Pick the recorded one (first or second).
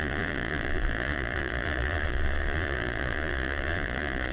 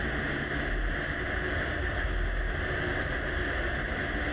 second